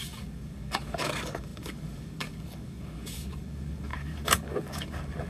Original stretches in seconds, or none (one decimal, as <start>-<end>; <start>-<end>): none